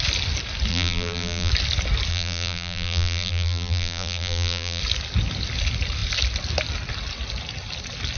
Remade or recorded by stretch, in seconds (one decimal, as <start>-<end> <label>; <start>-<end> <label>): 0.0-0.7 recorded; 0.7-1.5 remade; 1.5-2.1 recorded; 2.1-4.8 remade; 4.8-8.2 recorded